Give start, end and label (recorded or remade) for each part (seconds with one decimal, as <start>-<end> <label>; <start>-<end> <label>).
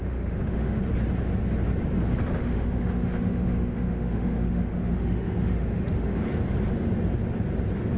0.0-0.8 remade; 0.8-2.4 recorded; 2.4-6.2 remade; 6.2-8.0 recorded